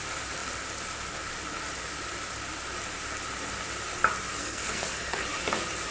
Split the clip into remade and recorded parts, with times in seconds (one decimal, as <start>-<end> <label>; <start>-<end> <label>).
0.0-4.4 recorded; 4.4-5.2 remade; 5.2-5.9 recorded